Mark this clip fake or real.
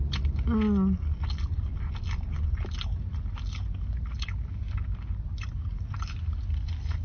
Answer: real